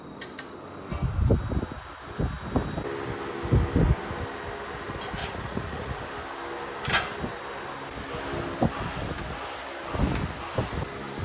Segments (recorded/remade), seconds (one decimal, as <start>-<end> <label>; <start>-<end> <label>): 0.0-5.2 recorded; 5.2-6.0 remade; 6.0-11.2 recorded